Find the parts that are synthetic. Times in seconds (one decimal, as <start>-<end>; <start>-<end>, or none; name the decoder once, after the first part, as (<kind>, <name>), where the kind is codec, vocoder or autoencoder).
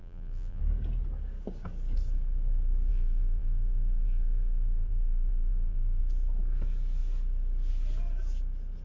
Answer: 0.0-0.6 (vocoder, BigVGAN v2); 2.9-6.0